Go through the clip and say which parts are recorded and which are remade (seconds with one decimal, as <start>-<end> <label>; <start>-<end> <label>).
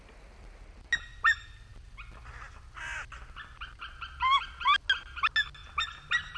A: 0.0-6.4 recorded